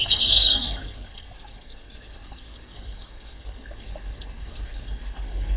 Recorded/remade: remade